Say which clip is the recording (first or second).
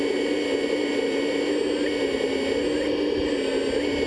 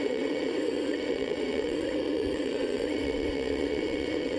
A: first